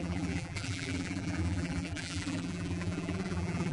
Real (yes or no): no